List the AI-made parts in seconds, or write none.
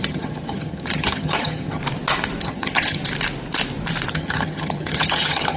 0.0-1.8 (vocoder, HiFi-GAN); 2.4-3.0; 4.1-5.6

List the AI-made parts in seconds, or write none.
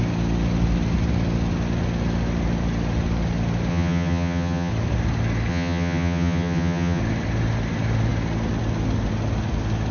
3.7-4.7 (vocoder, HiFi-GAN); 5.5-7.0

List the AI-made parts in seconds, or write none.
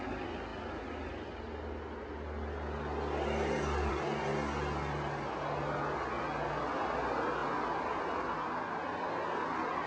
none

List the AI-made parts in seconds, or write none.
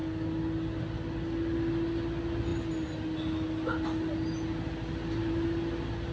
none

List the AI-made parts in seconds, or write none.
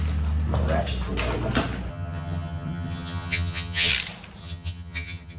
1.9-3.9 (vocoder, HiFi-GAN); 4.4-5.4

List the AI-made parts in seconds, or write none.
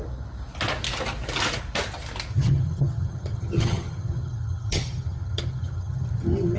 2.3-6.6 (vocoder, HiFi-GAN)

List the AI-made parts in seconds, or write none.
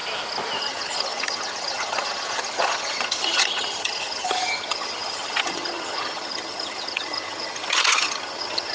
0.6-8.7 (vocoder, HiFi-GAN)